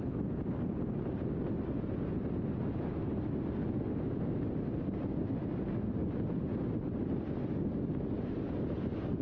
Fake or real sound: real